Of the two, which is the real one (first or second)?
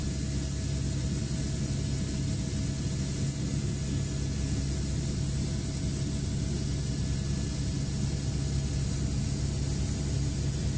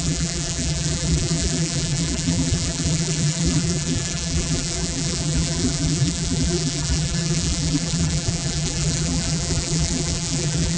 first